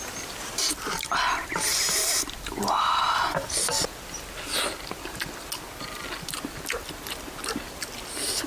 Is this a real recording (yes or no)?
yes